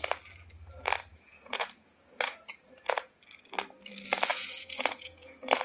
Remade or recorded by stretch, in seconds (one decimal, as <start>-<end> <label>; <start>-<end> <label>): 0.0-1.1 recorded; 1.1-3.2 remade; 3.2-4.3 recorded; 4.3-5.6 remade